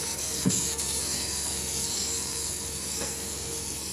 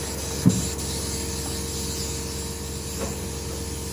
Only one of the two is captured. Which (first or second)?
second